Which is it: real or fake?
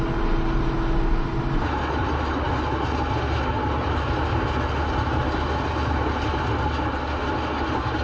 real